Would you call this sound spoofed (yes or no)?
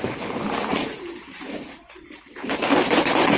yes